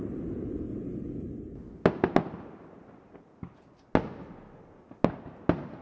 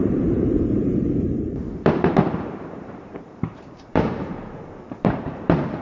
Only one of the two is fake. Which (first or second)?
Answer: second